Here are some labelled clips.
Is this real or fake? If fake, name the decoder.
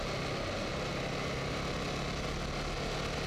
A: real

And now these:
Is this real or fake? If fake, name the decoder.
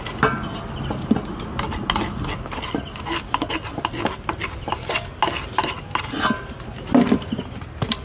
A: real